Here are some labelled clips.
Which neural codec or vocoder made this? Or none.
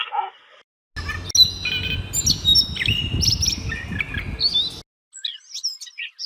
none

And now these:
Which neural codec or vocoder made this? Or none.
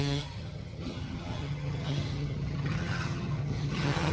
vocoder, HiFi-GAN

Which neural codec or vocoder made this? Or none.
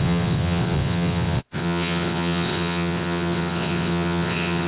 vocoder, WaveNeXt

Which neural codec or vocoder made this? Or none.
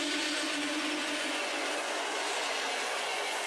vocoder, Vocos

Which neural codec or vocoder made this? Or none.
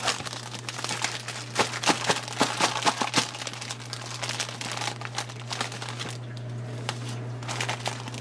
none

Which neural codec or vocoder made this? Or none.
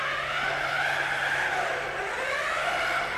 none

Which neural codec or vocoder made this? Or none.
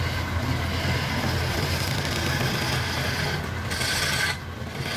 none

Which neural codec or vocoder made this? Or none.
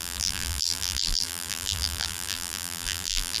vocoder, BigVGAN v2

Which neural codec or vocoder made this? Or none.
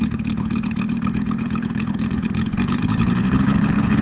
codec, HILCodec